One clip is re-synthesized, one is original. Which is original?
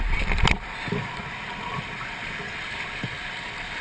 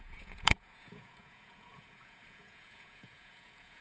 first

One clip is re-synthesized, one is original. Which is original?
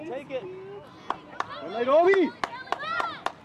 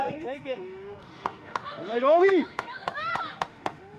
first